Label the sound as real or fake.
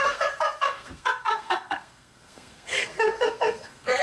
fake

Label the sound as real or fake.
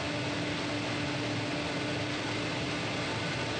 real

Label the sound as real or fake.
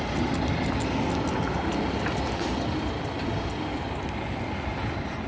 real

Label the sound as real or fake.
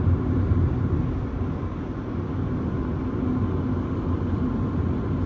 real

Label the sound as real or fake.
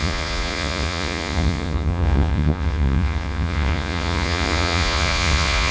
fake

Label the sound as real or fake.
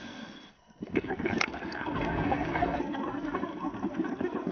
fake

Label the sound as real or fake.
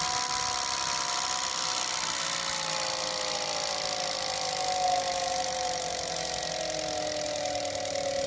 real